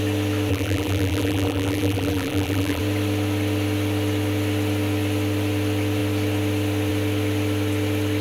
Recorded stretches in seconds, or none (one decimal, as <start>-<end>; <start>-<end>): 0.0-0.5; 2.8-8.2